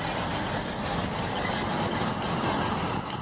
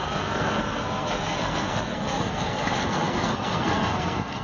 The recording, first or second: first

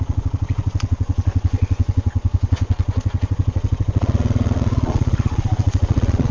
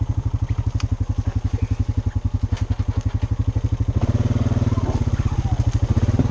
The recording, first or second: second